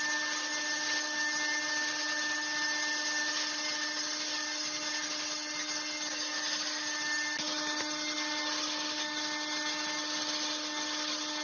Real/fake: real